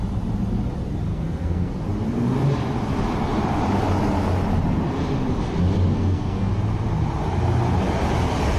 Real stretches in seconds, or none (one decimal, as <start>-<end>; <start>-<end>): 0.0-1.1; 1.7-5.9; 6.5-8.6